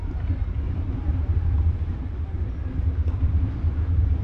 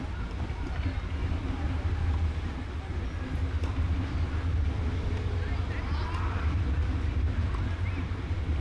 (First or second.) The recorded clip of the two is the second